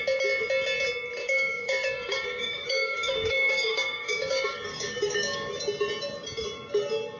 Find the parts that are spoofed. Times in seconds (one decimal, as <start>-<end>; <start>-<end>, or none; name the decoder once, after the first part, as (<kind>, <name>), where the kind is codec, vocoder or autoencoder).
1.2-5.5 (codec, DAC)